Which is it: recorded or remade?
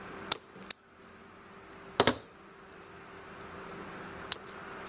recorded